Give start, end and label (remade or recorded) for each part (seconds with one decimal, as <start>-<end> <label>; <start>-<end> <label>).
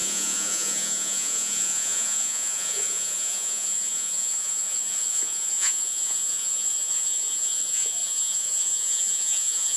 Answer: 0.0-9.8 remade